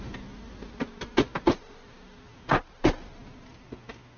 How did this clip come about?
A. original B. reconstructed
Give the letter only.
A